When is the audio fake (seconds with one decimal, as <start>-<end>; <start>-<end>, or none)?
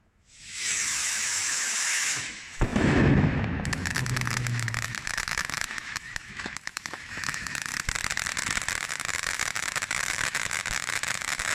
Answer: 0.0-7.7; 8.8-11.5